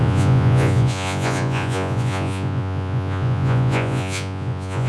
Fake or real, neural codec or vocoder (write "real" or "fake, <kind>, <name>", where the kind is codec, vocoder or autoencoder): fake, vocoder, Vocos